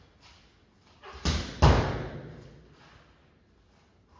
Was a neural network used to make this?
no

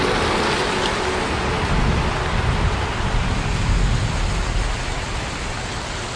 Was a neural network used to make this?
no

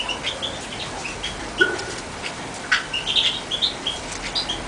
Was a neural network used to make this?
no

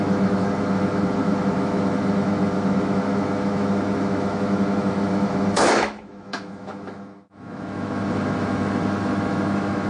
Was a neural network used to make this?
yes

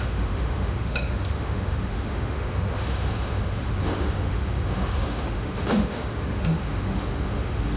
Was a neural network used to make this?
yes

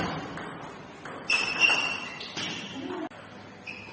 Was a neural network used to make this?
no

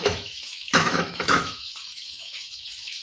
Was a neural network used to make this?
yes